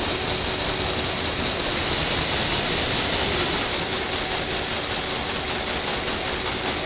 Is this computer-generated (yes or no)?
no